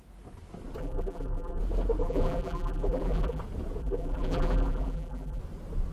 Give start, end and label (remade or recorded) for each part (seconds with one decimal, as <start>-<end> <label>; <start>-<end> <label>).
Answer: 0.0-0.8 recorded; 0.8-1.6 remade; 1.6-2.0 recorded; 2.0-3.4 remade; 3.4-3.8 recorded; 3.8-5.4 remade; 5.4-5.9 recorded